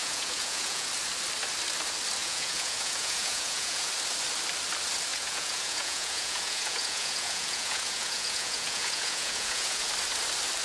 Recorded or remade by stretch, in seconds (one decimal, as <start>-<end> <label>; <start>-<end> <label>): 0.0-0.9 remade; 0.9-2.2 recorded; 2.2-3.9 remade; 3.9-5.1 recorded; 5.1-9.9 remade; 9.9-10.6 recorded